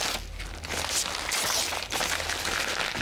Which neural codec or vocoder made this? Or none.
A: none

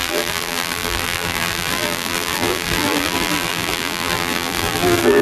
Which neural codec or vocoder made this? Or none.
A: vocoder, BigVGAN v2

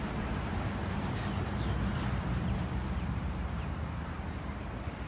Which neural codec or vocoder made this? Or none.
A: vocoder, BigVGAN v2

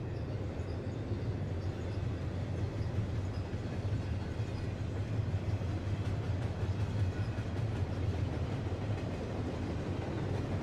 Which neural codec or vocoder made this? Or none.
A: none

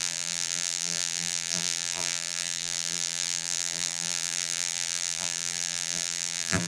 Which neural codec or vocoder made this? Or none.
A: vocoder, BigVGAN v2